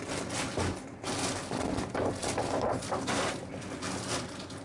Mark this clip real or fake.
real